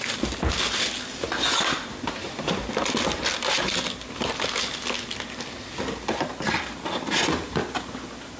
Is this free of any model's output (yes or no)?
yes